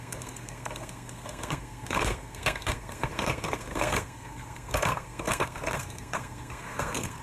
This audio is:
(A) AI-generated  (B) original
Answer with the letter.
A